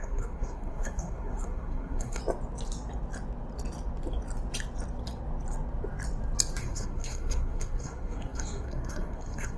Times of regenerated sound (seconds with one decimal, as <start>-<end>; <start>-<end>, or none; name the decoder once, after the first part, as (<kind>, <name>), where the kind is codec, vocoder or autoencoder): 0.0-2.2 (codec, SNAC); 6.6-9.6